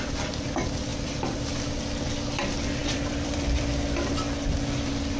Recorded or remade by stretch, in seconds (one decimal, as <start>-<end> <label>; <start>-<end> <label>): 0.0-0.9 recorded; 0.9-1.8 remade; 1.8-2.8 recorded; 2.8-4.1 remade; 4.1-5.2 recorded